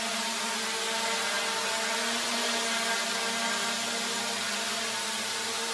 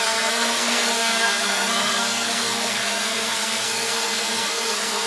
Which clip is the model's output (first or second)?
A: second